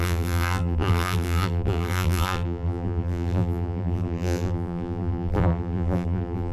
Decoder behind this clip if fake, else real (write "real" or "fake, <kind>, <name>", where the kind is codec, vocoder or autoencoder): fake, vocoder, BigVGAN v2